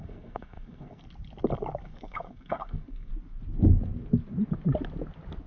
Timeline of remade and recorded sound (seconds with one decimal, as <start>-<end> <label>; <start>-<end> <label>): 0.0-1.0 remade; 1.0-1.8 recorded; 1.8-3.1 remade; 3.1-5.5 recorded